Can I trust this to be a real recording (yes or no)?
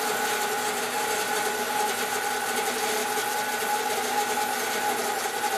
yes